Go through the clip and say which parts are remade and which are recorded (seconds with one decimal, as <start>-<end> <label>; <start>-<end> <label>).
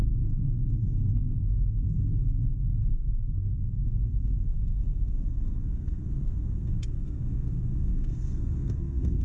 0.0-9.2 remade